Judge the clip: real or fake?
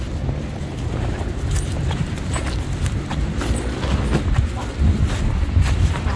real